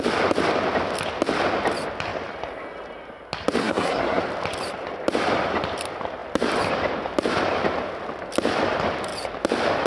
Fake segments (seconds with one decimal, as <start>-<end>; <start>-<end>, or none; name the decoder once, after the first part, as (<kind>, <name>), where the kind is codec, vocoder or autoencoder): 3.6-4.2 (codec, SNAC)